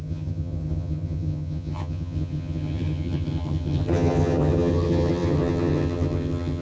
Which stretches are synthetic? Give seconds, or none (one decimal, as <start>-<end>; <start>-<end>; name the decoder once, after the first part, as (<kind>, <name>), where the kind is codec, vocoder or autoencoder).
0.0-6.6 (vocoder, HiFi-GAN)